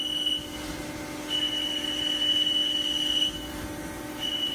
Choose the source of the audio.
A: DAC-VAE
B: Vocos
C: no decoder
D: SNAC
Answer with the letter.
C